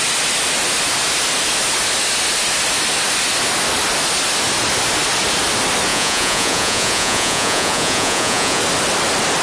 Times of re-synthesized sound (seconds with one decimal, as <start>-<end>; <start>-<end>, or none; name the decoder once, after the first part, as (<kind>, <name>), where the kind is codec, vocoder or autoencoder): 5.9-8.6 (vocoder, Vocos)